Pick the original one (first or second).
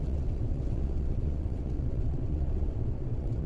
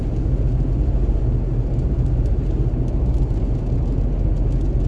second